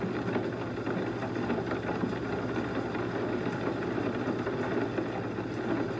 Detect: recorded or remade recorded